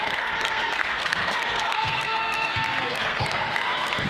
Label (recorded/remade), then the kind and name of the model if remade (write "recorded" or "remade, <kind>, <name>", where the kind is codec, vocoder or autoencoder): remade, codec, SNAC